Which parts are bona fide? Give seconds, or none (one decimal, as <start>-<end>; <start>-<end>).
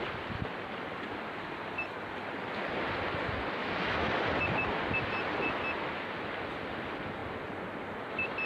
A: 0.0-3.6; 4.1-8.5